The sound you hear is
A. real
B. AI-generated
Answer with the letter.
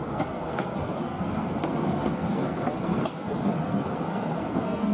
B